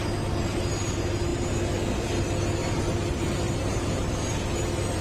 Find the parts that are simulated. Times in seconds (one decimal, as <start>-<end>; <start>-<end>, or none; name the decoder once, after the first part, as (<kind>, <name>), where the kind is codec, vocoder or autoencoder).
none